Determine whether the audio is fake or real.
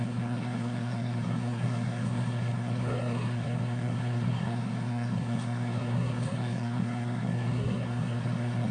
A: fake